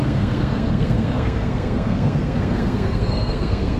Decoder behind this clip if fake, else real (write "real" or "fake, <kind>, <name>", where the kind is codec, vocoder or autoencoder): fake, codec, SNAC